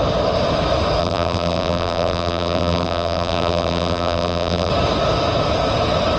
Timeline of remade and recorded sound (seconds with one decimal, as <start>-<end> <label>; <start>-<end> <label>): 0.0-1.0 recorded; 1.0-4.7 remade; 4.7-6.2 recorded

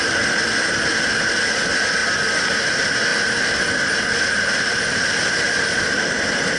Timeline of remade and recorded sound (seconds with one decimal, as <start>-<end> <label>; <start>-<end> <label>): 0.0-6.6 recorded

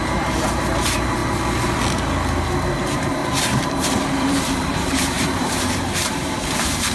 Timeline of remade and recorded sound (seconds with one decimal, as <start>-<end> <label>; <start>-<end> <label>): 0.0-1.2 remade; 1.2-2.7 recorded; 2.7-6.9 remade

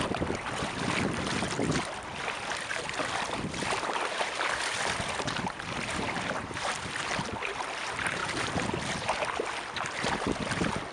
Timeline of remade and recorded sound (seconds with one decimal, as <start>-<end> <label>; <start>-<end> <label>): 0.0-2.7 recorded; 2.7-7.0 remade; 7.0-10.9 recorded

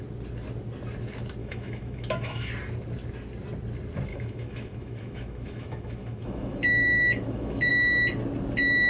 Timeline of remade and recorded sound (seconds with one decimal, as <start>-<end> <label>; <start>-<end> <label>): 0.0-1.4 recorded; 1.4-2.5 remade; 2.5-4.1 recorded; 4.1-7.7 remade; 7.7-8.9 recorded

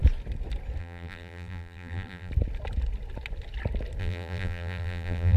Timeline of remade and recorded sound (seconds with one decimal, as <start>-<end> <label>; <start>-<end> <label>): 0.0-0.8 recorded; 0.8-2.3 remade; 2.3-4.0 recorded; 4.0-5.4 remade

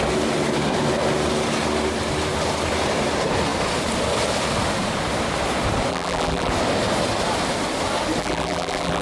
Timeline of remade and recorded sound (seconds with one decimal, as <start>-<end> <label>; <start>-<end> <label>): 0.0-5.9 recorded; 5.9-6.5 remade; 6.5-8.2 recorded; 8.2-9.0 remade